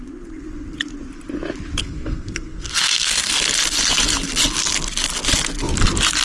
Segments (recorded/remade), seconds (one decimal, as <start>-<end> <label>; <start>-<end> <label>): 0.0-1.8 recorded; 1.8-3.3 remade; 3.3-6.2 recorded

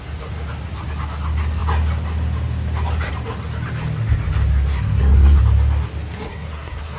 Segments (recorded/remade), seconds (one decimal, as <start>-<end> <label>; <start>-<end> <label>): 0.0-4.7 recorded; 4.7-5.4 remade; 5.4-6.3 recorded; 6.3-7.0 remade

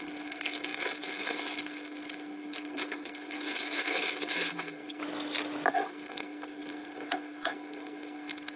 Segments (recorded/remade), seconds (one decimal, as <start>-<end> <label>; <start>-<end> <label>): 0.0-5.0 remade; 5.0-5.7 recorded; 5.7-8.6 remade

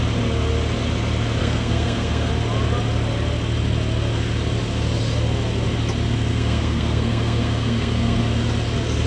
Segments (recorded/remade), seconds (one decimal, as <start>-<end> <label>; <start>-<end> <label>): 0.0-1.4 recorded; 1.4-2.3 remade; 2.3-6.3 recorded; 6.3-8.2 remade; 8.2-9.1 recorded

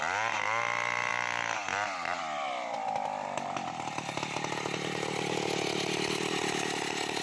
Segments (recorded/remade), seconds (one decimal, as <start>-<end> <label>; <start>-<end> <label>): 0.0-7.2 recorded